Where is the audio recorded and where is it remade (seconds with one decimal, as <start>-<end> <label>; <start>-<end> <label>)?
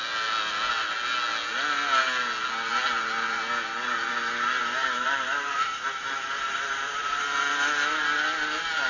0.0-4.6 recorded; 4.6-7.2 remade; 7.2-8.9 recorded